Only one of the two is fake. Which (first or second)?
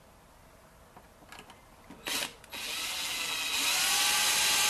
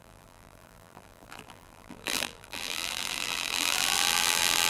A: second